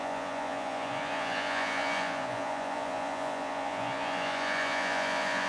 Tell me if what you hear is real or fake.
fake